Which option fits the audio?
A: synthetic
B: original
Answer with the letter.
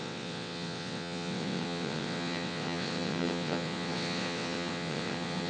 A